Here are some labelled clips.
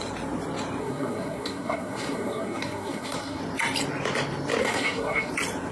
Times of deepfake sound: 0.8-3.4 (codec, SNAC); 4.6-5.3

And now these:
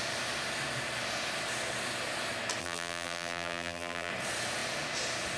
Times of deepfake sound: 2.6-4.1 (vocoder, BigVGAN v2)

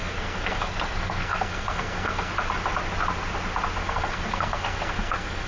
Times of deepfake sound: 0.0-2.3 (codec, SNAC); 3.8-5.5